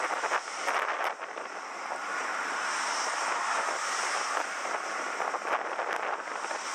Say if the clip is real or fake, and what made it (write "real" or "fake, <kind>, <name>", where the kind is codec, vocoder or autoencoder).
real